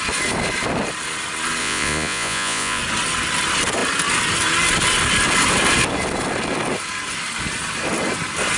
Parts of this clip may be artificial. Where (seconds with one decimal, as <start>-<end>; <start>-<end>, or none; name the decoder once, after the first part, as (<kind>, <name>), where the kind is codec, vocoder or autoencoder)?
1.6-2.8 (vocoder, Vocos)